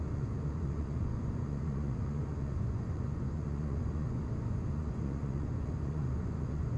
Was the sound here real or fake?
fake